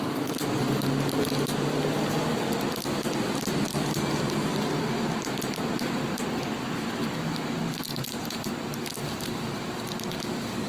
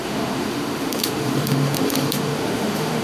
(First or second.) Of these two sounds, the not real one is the second